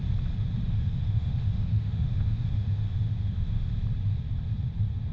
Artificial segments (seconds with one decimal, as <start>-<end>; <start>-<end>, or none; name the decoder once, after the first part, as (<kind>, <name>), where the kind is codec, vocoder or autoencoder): 0.6-3.7 (autoencoder, DAC-VAE)